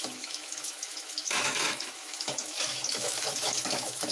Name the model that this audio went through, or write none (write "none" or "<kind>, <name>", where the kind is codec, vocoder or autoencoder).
autoencoder, DAC-VAE